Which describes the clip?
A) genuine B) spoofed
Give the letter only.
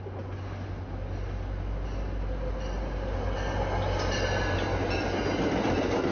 A